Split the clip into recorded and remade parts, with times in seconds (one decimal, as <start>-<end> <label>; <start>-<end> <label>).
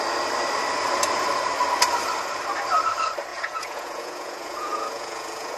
0.0-3.3 recorded; 3.3-5.6 remade